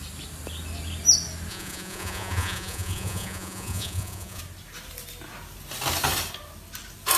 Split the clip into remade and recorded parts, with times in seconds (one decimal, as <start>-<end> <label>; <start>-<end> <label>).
0.0-1.5 recorded; 1.5-4.4 remade; 4.4-7.2 recorded